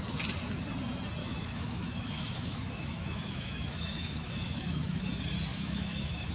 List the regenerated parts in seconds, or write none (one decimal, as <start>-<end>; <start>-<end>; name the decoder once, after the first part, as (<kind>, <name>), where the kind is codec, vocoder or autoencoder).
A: 1.2-5.0 (autoencoder, DAC-VAE); 5.5-6.3

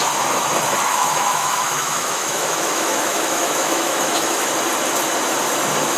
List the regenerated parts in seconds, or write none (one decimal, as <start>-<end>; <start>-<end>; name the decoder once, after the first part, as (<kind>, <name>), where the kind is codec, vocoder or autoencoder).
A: 0.9-4.5 (autoencoder, DAC-VAE)